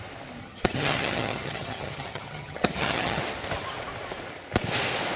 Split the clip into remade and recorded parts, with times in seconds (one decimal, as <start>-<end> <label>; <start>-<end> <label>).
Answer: 0.0-0.4 recorded; 0.4-3.2 remade; 3.2-5.2 recorded